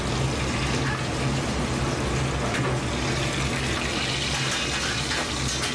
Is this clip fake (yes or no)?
no